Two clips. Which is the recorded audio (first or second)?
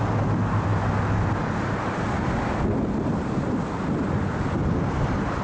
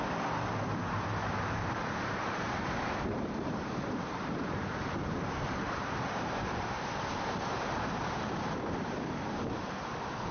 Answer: first